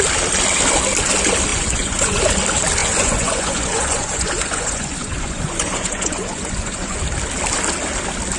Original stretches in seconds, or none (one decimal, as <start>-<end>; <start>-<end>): 0.0-1.5; 2.2-2.8; 7.0-8.4